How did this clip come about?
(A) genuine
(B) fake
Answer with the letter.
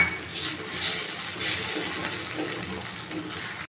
A